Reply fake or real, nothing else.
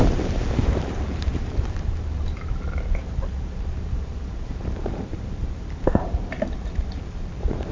fake